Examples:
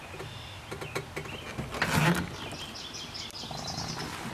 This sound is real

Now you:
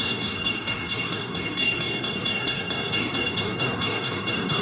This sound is fake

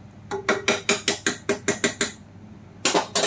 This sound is real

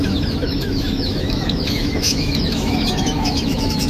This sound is fake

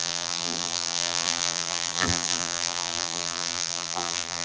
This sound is fake